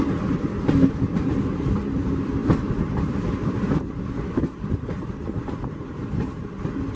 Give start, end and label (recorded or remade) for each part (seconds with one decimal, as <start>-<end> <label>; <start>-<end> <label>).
0.0-1.1 recorded; 1.1-1.8 remade; 1.8-2.4 recorded; 2.4-6.6 remade; 6.6-7.0 recorded